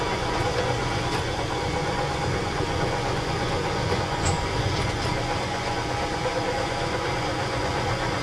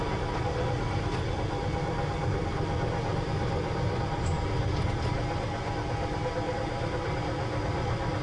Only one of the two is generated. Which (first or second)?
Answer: first